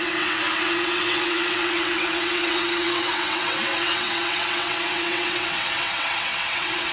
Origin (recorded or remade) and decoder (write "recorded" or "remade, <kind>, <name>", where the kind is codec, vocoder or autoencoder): remade, vocoder, WaveNeXt